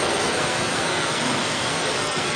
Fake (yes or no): yes